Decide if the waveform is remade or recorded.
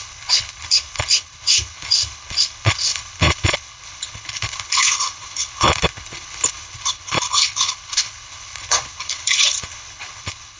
remade